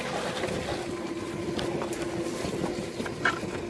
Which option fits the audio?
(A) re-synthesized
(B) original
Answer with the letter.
B